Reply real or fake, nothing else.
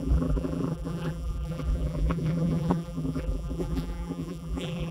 fake